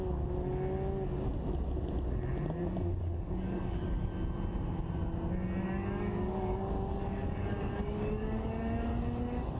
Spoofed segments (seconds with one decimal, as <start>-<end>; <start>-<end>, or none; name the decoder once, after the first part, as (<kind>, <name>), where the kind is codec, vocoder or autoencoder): 3.0-4.1 (codec, DAC); 5.6-9.6